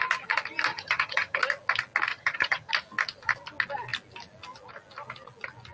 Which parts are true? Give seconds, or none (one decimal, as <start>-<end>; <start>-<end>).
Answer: 0.0-0.7; 1.4-2.1; 2.7-5.7